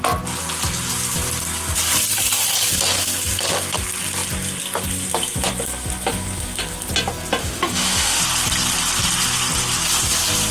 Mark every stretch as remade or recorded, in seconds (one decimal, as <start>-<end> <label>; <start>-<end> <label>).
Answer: 0.0-7.4 recorded; 7.4-8.2 remade; 8.2-10.5 recorded